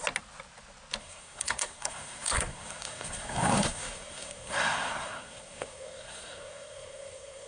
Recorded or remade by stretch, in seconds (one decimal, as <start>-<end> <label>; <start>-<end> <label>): 0.0-1.0 recorded; 1.0-7.5 remade